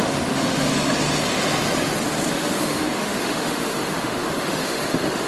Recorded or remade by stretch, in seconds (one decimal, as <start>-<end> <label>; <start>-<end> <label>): 0.0-0.7 remade; 0.7-2.3 recorded; 2.3-5.3 remade